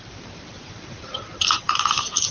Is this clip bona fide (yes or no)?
no